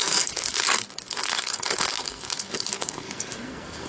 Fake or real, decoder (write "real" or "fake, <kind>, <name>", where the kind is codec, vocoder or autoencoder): fake, codec, SNAC